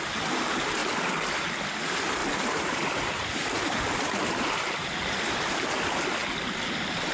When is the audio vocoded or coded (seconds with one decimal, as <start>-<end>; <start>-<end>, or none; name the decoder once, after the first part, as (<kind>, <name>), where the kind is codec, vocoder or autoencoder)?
2.2-5.7 (vocoder, BigVGAN v2)